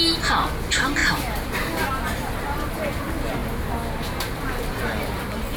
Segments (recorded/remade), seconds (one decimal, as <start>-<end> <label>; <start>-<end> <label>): 0.0-5.6 recorded